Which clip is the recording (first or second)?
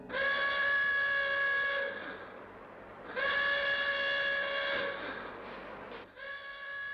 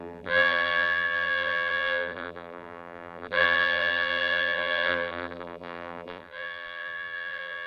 first